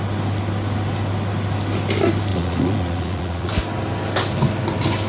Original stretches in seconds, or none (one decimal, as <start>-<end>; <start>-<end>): 0.0-2.3; 3.5-5.1